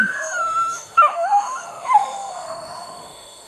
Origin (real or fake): fake